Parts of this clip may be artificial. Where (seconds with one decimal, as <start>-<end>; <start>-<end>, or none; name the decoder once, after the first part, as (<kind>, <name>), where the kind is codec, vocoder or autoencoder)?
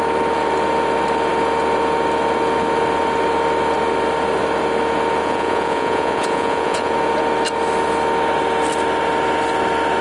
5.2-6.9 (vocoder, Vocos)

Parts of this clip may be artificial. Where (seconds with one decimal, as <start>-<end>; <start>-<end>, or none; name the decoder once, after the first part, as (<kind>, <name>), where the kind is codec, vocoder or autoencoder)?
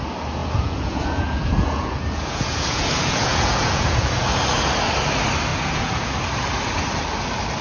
0.4-4.2 (vocoder, Vocos); 5.5-6.1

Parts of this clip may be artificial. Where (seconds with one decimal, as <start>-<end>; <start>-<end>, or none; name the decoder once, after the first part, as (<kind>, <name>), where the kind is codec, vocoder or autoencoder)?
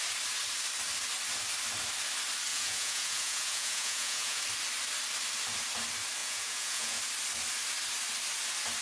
2.5-4.4 (vocoder, Vocos); 6.2-7.0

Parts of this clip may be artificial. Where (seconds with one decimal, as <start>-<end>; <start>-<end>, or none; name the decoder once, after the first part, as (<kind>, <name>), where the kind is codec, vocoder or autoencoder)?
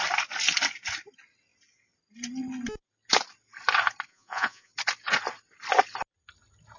4.1-4.7 (vocoder, Vocos)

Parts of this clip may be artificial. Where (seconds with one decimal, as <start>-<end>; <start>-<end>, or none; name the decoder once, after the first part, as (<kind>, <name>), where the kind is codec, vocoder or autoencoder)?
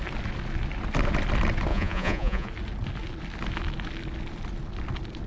1.7-2.5 (vocoder, Vocos)